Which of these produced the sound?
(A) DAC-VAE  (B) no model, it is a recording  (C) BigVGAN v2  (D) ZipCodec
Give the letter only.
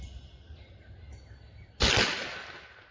B